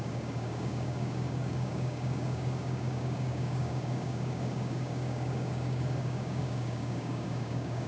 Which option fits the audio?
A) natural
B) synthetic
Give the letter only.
B